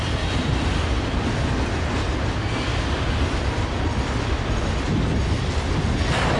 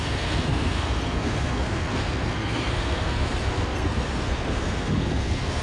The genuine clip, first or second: first